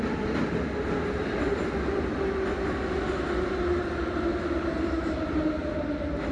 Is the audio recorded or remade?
recorded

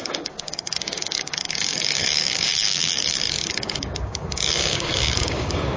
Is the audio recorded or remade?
remade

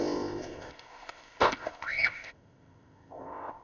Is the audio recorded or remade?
remade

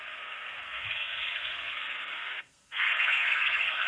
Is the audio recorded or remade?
remade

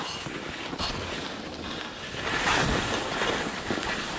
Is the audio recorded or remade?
recorded